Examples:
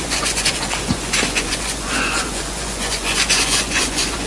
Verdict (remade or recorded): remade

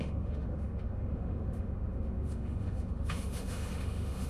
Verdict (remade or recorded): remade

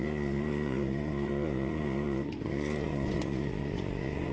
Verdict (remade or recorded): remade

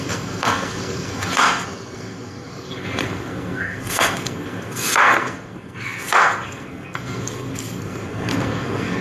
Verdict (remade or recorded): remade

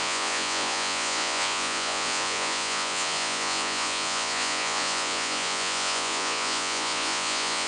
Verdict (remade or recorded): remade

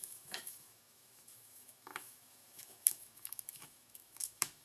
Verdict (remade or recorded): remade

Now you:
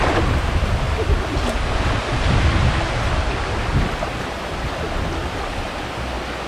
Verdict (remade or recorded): recorded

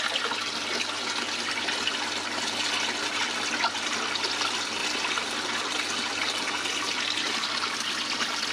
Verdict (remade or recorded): recorded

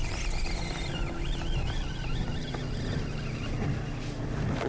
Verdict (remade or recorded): recorded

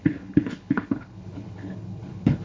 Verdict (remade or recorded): remade